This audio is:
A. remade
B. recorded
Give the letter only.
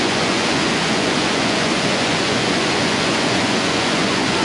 A